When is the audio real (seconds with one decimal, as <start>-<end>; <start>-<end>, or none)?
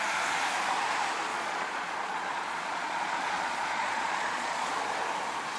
0.0-1.3; 4.7-5.6